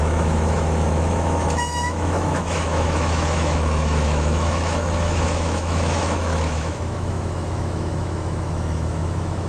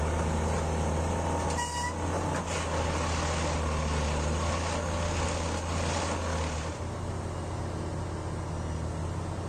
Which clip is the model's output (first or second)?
first